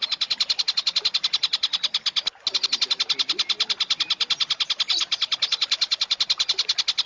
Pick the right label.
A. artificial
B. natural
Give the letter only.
B